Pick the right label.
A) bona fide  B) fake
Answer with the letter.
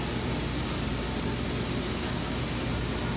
A